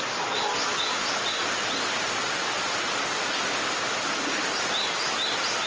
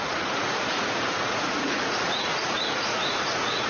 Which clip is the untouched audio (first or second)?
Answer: first